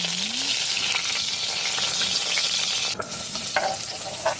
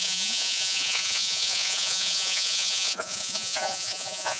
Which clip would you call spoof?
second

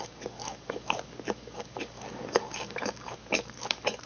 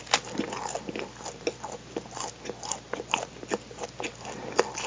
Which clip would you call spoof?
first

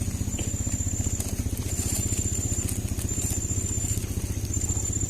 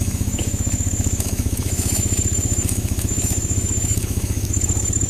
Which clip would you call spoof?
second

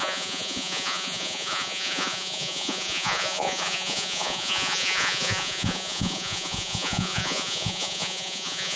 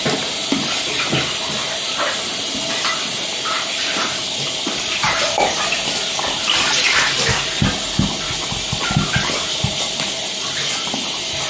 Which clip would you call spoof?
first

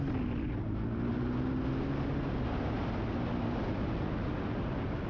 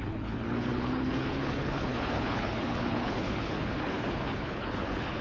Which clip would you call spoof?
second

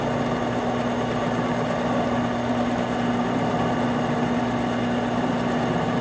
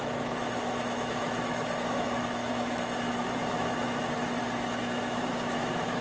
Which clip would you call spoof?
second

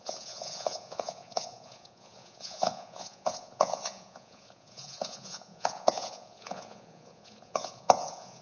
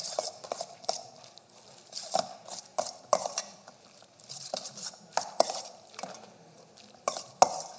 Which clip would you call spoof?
first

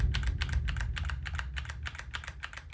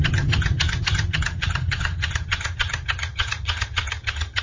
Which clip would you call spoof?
second